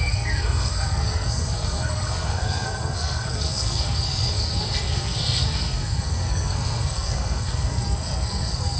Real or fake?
fake